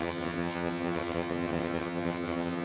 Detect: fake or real fake